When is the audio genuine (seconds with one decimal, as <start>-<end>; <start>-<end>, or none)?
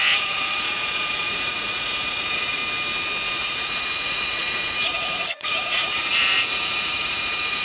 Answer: 2.6-3.3